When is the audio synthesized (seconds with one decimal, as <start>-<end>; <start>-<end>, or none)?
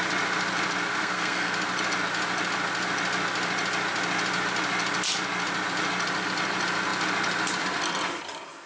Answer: 0.9-1.5